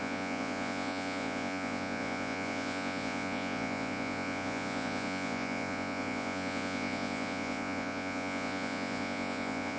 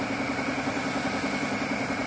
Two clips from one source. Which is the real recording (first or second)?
second